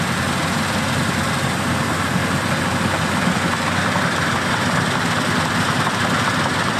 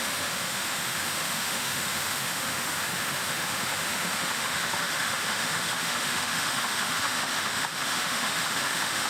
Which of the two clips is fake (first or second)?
second